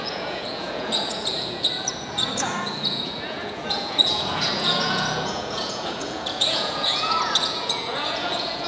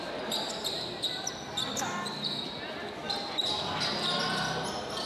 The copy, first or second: first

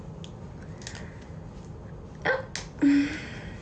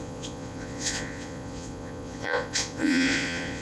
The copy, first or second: second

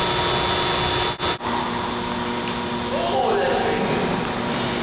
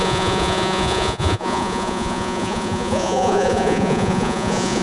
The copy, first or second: second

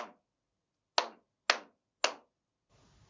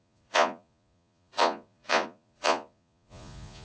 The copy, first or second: second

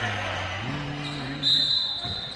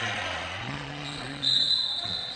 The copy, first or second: second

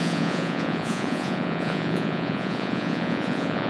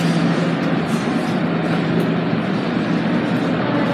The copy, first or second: first